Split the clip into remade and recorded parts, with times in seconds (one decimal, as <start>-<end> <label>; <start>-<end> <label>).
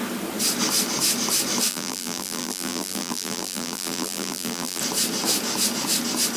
0.0-1.7 recorded; 1.7-4.8 remade; 4.8-6.4 recorded